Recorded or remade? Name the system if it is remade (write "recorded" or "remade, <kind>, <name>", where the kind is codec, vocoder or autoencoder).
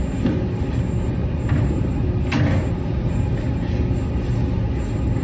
recorded